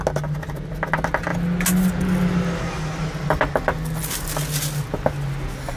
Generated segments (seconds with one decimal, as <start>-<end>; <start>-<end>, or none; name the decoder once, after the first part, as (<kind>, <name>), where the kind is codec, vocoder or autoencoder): none